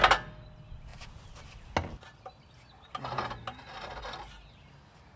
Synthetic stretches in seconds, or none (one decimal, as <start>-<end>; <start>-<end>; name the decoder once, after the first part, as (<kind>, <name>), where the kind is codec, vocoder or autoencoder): none